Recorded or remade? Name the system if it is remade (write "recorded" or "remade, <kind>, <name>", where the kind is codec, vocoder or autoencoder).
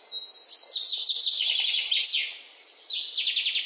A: recorded